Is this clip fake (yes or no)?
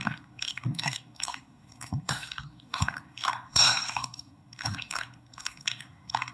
yes